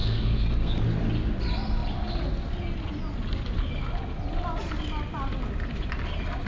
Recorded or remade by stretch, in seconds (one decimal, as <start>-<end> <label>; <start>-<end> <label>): 0.0-0.8 remade; 0.8-6.5 recorded